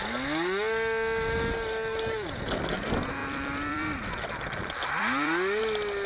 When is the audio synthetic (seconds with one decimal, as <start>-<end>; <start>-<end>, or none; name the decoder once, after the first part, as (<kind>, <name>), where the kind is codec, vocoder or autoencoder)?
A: 3.2-5.6 (vocoder, BigVGAN v2)